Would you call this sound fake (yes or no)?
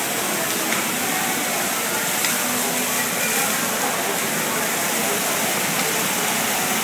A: no